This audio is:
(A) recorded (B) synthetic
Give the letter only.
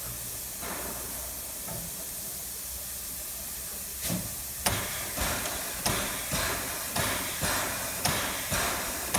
A